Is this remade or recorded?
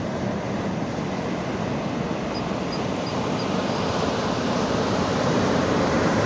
recorded